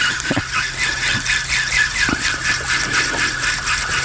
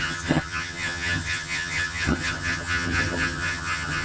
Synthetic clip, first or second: second